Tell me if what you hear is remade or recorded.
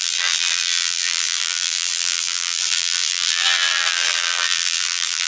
remade